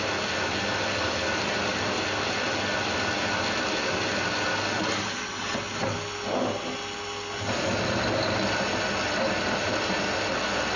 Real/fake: real